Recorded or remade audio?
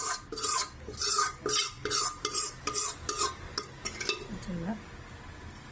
recorded